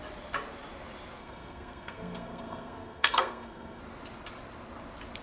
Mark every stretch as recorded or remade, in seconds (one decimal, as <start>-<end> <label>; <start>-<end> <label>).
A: 0.0-1.2 recorded; 1.2-3.8 remade; 3.8-5.2 recorded